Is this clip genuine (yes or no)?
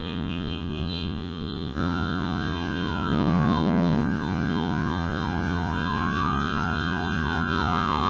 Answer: no